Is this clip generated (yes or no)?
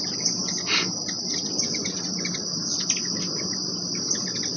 no